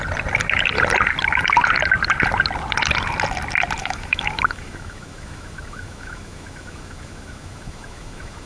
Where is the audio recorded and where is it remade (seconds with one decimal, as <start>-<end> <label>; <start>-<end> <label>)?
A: 0.0-3.8 recorded; 3.8-8.5 remade